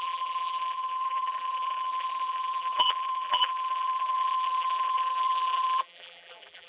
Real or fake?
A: fake